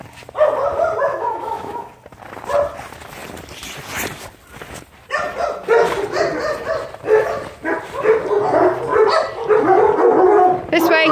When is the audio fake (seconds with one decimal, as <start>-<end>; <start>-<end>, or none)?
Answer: 1.1-1.9